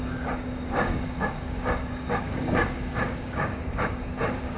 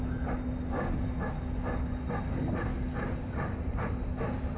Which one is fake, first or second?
first